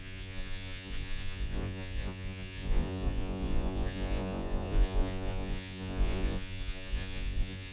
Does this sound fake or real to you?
fake